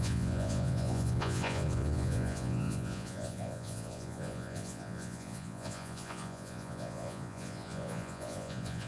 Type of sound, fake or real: fake